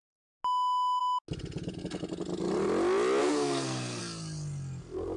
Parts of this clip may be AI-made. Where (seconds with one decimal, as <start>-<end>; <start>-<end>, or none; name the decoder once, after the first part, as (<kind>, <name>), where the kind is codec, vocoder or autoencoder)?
3.2-4.0 (codec, SNAC)